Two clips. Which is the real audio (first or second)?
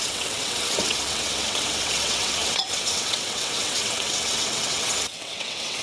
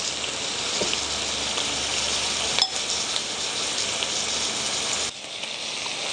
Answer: second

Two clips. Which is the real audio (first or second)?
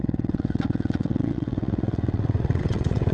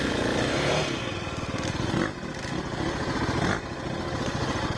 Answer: second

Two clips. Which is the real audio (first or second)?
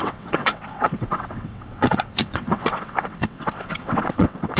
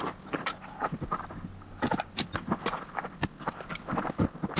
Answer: second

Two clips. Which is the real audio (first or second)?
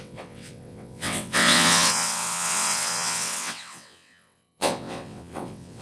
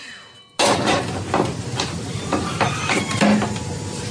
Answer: second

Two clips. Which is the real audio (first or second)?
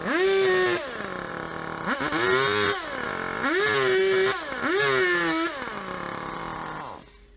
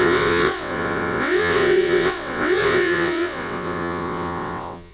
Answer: first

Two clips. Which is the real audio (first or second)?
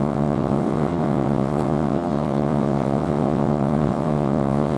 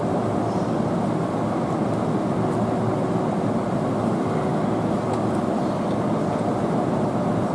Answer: second